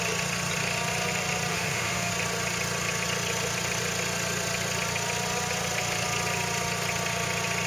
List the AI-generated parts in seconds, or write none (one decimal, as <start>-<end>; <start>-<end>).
1.5-2.1